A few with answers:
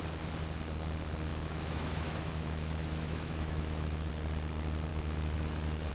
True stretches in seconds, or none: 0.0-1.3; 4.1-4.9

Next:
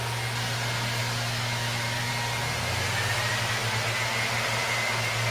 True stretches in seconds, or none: 0.0-1.0; 2.1-5.3

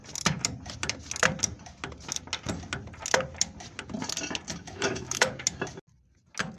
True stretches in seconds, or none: 0.0-4.5; 5.3-6.6

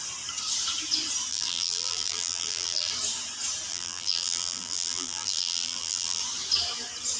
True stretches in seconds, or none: 0.0-1.3; 2.9-3.7; 6.2-7.2

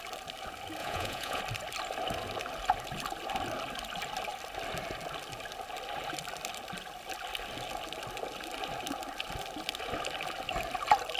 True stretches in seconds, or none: 0.0-0.8; 1.4-11.2

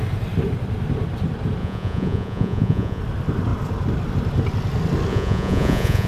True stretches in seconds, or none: 0.0-1.6; 3.0-5.1

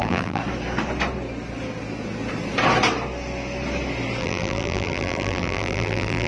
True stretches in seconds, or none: 0.4-4.2

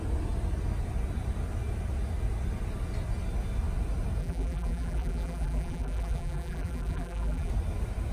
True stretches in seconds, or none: 0.0-4.2; 7.5-8.1